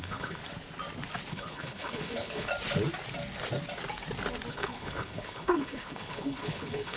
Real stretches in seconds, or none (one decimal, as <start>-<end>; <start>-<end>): 0.4-1.3; 2.5-4.5